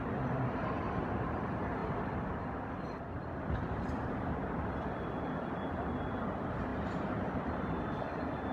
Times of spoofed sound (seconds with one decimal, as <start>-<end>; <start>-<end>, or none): 0.0-8.5